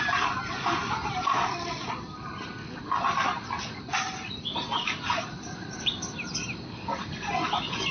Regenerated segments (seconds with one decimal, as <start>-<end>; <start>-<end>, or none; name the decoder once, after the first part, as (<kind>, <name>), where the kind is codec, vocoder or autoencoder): none